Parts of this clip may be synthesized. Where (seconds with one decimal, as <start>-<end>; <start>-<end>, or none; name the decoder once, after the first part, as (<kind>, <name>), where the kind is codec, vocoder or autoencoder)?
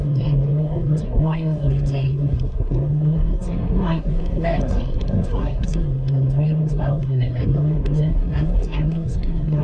0.0-9.6 (codec, SNAC)